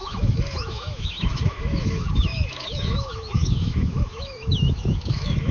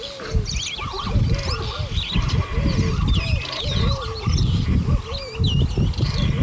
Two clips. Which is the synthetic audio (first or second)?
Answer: first